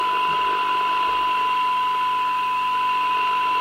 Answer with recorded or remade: recorded